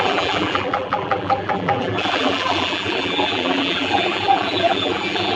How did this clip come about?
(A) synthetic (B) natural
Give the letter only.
A